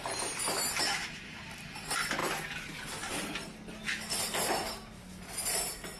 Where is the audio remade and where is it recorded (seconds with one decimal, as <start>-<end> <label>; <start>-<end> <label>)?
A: 0.0-6.0 recorded